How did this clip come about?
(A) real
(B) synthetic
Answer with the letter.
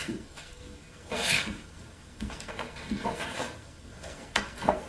B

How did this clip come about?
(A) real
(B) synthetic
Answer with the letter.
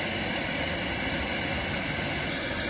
A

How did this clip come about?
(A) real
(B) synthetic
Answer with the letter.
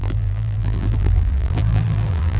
B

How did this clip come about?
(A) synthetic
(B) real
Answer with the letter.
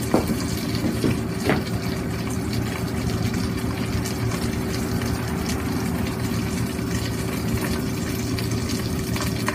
B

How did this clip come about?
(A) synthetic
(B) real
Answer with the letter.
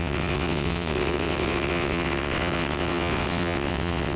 A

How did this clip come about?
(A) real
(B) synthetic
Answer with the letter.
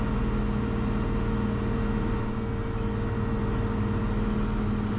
A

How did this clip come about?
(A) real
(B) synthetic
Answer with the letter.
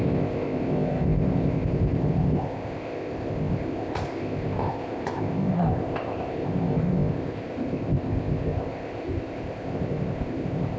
B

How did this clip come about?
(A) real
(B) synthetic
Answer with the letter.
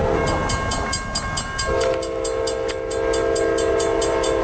A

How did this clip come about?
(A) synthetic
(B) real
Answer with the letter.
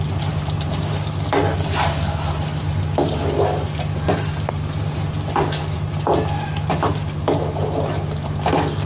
B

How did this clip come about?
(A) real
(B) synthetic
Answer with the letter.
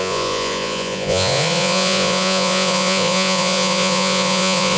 B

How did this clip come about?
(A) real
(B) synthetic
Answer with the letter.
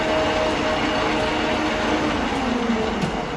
A